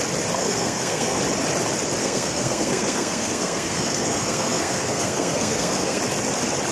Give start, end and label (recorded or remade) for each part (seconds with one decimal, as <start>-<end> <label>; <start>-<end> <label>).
0.0-0.4 recorded; 0.4-1.2 remade; 1.2-2.0 recorded; 2.0-6.0 remade; 6.0-6.7 recorded